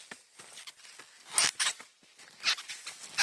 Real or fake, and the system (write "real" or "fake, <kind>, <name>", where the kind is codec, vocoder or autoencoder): real